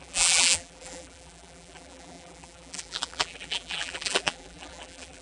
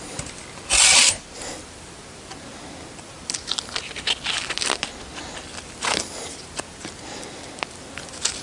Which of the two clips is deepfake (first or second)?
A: first